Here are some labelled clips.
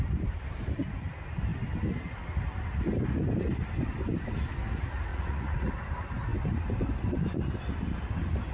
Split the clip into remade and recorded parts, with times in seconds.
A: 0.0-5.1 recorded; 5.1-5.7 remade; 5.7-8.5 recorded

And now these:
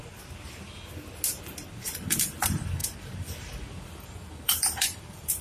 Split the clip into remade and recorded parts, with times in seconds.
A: 0.0-1.7 recorded; 1.7-5.4 remade